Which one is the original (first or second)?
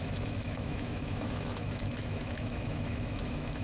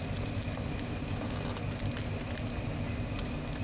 second